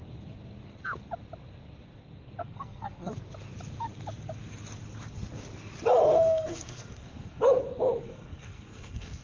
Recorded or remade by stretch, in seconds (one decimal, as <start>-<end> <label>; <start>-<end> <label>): 0.0-2.4 recorded; 2.4-3.1 remade; 3.1-6.1 recorded; 6.1-7.4 remade; 7.4-8.0 recorded; 8.0-9.2 remade